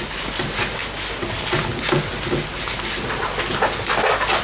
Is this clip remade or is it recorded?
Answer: recorded